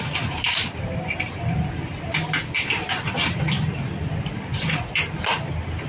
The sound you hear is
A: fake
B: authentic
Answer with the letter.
B